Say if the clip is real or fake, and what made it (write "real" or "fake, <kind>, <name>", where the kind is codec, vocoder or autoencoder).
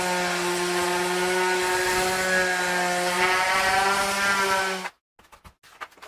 real